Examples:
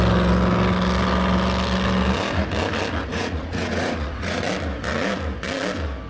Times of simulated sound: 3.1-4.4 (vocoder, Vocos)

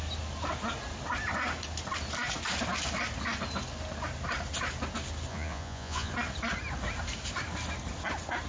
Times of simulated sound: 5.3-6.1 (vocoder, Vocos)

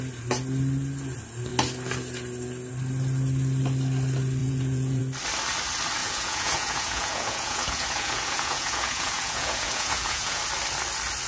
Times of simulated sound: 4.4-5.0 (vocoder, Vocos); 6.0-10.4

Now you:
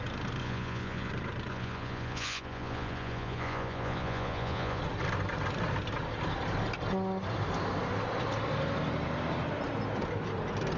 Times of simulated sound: 0.4-1.1 (vocoder, Vocos); 1.5-4.8

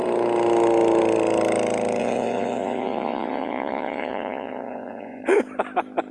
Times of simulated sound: 2.0-5.2 (vocoder, Vocos)

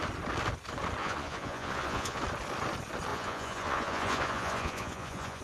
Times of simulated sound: 1.0-2.2 (vocoder, Vocos); 3.1-5.4